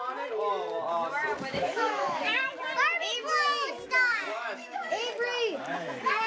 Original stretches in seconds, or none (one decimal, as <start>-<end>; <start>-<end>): 0.0-1.5; 2.2-4.3; 5.0-6.3